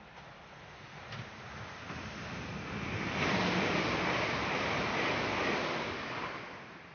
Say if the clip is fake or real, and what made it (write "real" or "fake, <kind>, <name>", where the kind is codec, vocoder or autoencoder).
real